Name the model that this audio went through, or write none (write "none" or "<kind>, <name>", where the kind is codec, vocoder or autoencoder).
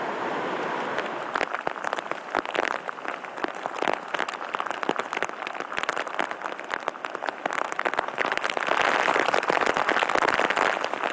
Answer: none